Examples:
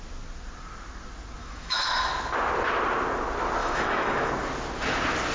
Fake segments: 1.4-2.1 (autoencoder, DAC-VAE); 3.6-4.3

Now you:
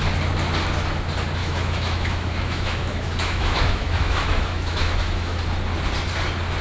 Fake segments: 1.4-5.4 (autoencoder, DAC-VAE)

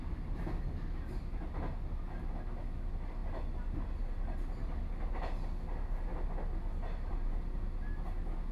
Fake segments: none

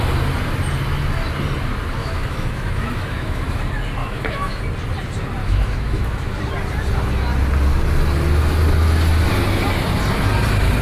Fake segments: 2.0-3.6 (autoencoder, DAC-VAE); 4.0-4.6; 5.4-6.4